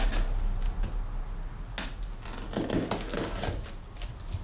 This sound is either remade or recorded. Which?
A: recorded